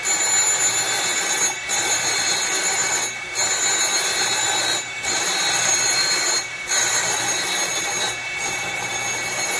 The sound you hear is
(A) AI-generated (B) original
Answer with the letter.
B